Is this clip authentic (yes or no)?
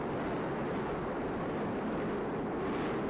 yes